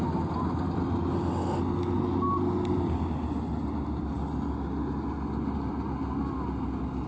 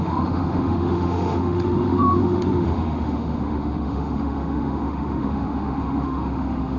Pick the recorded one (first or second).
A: first